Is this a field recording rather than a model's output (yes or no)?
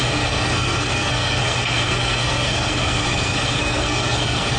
no